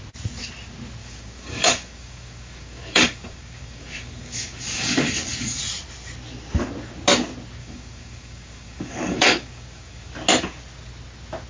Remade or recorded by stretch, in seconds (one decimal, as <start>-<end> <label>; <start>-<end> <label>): 0.0-1.0 recorded; 1.0-5.6 remade; 5.6-7.6 recorded; 7.6-10.1 remade; 10.1-11.5 recorded